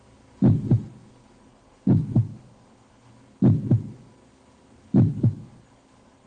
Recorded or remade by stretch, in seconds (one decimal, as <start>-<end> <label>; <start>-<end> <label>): 0.0-1.5 recorded; 1.5-3.1 remade; 3.1-5.1 recorded; 5.1-6.3 remade